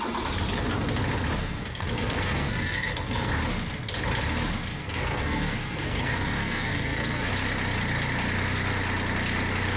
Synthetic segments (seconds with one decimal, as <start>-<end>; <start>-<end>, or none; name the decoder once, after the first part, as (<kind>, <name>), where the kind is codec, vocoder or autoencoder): 1.4-3.3 (codec, SNAC); 4.7-7.3